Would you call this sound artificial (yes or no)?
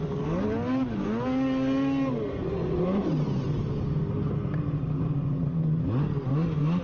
no